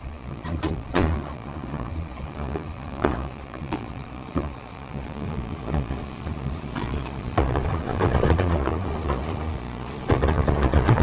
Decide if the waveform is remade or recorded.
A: remade